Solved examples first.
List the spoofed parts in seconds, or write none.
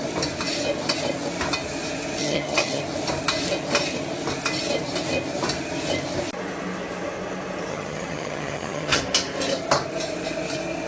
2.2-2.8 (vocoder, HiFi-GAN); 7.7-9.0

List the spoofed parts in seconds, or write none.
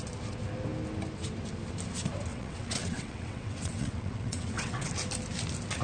2.3-4.9 (vocoder, WaveNeXt)